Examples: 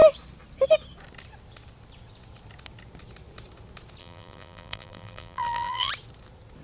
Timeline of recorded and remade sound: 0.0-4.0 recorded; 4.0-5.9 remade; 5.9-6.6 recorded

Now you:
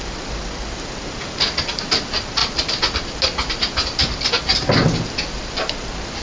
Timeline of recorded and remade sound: 0.0-6.2 recorded

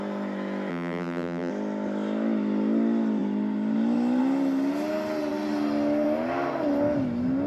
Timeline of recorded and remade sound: 0.0-0.7 recorded; 0.7-1.5 remade; 1.5-7.5 recorded

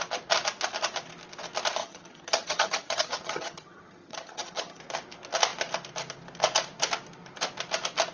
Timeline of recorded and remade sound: 0.0-1.8 recorded; 1.8-4.8 remade; 4.8-8.1 recorded